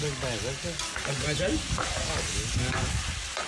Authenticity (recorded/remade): recorded